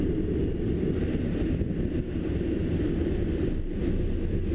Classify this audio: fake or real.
real